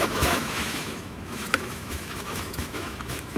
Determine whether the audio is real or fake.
fake